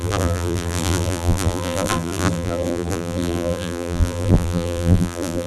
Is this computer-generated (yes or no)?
yes